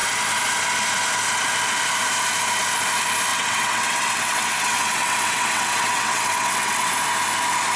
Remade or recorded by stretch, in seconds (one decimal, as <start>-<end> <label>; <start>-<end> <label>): 0.0-3.3 recorded; 3.3-6.9 remade; 6.9-7.8 recorded